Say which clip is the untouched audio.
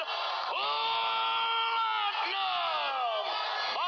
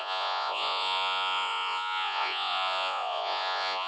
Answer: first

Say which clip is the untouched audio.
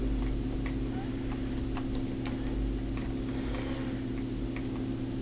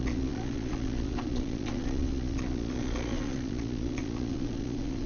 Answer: first